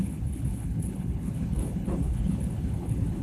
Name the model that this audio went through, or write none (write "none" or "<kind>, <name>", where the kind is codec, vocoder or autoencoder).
codec, HILCodec